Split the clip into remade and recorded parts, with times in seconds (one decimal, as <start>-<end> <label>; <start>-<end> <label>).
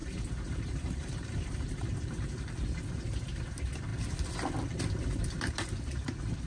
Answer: 0.0-2.5 remade; 2.5-6.5 recorded